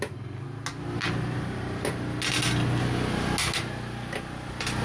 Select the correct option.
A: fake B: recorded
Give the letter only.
B